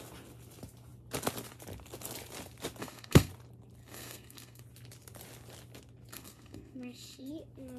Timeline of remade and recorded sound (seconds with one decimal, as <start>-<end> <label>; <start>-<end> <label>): 0.0-2.8 recorded; 2.8-3.3 remade; 3.3-3.8 recorded; 3.8-4.6 remade; 4.6-6.1 recorded; 6.1-7.3 remade; 7.3-7.8 recorded